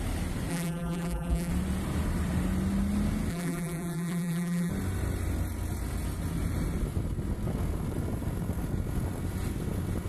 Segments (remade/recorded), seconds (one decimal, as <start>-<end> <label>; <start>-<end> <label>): 0.0-0.5 recorded; 0.5-1.5 remade; 1.5-3.3 recorded; 3.3-4.7 remade; 4.7-10.1 recorded